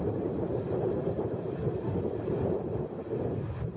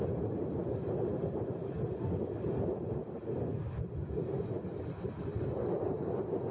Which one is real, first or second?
second